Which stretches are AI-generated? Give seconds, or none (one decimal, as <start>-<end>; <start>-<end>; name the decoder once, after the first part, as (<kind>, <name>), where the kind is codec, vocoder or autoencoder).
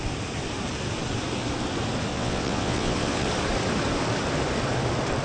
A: 2.1-3.3 (vocoder, WaveNeXt)